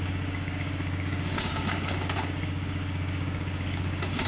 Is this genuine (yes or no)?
no